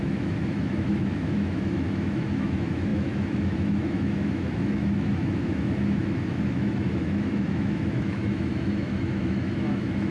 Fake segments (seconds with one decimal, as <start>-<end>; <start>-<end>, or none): 0.0-10.1